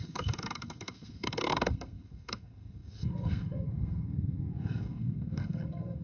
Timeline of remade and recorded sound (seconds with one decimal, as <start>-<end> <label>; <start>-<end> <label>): 0.0-6.0 remade